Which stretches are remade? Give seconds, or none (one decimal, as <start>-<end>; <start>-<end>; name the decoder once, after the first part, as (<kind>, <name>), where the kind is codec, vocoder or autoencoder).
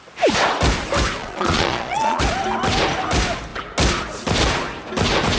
1.2-2.2 (vocoder, Vocos)